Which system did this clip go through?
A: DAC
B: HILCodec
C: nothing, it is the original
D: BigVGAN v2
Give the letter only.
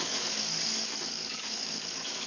A